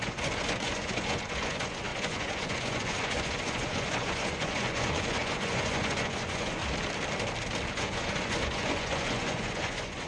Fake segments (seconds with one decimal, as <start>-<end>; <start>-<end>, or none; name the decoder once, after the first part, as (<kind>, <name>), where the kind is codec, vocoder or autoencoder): 0.0-6.6 (vocoder, Vocos); 7.7-10.1